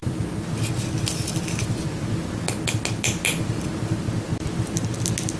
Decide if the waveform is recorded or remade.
recorded